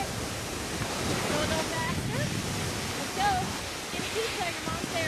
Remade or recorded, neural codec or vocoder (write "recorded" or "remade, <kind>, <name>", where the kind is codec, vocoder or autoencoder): recorded